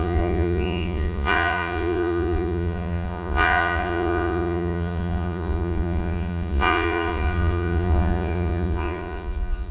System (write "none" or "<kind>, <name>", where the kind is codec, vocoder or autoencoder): vocoder, Vocos